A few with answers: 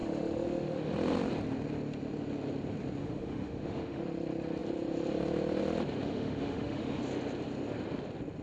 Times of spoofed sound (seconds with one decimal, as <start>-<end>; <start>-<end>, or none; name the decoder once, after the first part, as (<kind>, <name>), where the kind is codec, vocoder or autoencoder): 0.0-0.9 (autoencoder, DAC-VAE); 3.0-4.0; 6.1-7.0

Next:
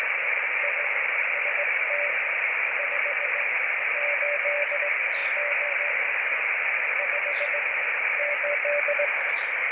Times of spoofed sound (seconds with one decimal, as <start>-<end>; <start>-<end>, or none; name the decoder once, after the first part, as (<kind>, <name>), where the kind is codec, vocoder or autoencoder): 5.2-5.8 (vocoder, BigVGAN v2)

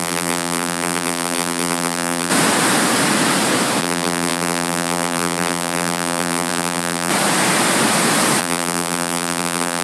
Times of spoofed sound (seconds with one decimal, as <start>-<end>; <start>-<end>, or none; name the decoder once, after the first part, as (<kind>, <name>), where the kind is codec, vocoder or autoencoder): 0.0-2.3 (vocoder, BigVGAN v2); 3.8-7.1; 8.4-9.8

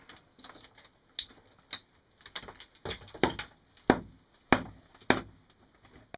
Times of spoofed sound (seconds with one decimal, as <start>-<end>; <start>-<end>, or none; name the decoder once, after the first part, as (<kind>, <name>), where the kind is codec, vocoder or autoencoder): none

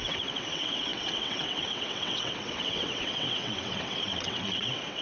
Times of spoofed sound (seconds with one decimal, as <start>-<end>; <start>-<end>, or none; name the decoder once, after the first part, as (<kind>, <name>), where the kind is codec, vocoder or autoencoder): 0.0-5.0 (vocoder, WaveNeXt)

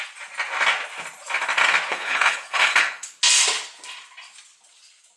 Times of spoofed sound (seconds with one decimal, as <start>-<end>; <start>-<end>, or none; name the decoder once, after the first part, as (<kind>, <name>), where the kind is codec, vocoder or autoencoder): 1.9-3.2 (codec, HILCodec)